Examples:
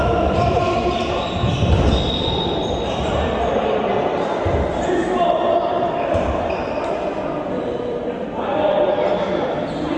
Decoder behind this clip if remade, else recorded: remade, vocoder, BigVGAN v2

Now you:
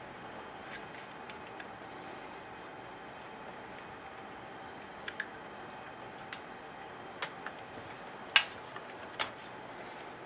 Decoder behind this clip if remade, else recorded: recorded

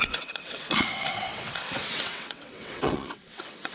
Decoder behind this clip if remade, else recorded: remade, vocoder, WaveNeXt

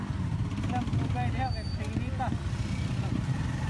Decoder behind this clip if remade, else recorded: recorded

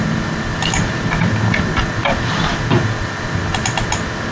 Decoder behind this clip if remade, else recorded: recorded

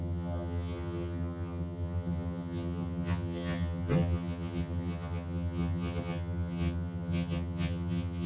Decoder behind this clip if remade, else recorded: remade, vocoder, HiFi-GAN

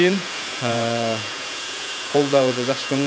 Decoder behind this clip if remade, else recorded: remade, vocoder, Vocos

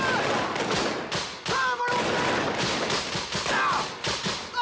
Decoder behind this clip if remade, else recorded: recorded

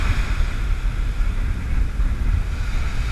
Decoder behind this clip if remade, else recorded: recorded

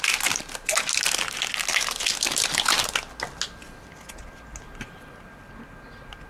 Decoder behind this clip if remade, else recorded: recorded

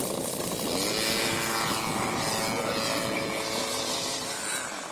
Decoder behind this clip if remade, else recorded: recorded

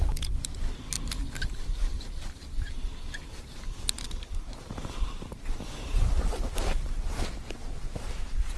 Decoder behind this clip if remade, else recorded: recorded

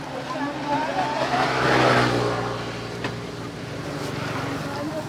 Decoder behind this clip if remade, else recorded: recorded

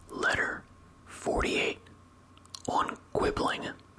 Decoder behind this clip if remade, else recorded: recorded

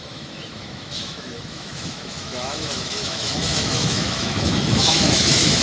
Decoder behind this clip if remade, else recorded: remade, autoencoder, DAC-VAE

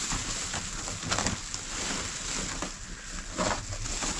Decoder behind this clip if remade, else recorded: recorded